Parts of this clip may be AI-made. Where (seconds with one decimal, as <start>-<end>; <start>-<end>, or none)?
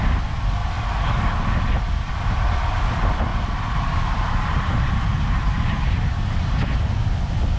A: 3.3-6.4